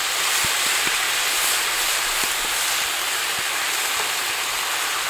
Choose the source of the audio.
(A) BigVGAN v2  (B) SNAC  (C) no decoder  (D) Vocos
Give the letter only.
C